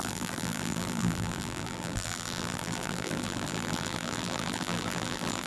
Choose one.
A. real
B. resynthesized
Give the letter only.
B